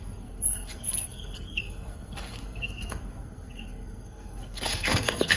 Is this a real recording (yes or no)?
no